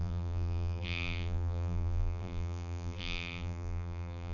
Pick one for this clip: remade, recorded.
remade